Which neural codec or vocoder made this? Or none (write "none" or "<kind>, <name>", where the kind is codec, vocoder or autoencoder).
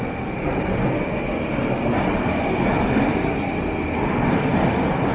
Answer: none